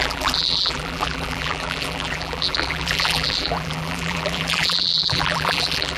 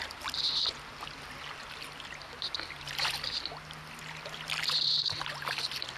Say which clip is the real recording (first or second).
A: second